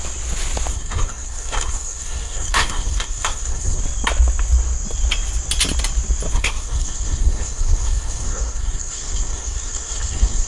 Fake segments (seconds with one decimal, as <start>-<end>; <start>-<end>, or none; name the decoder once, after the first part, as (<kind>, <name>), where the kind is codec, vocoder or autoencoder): 0.7-3.8 (codec, SNAC); 6.3-10.5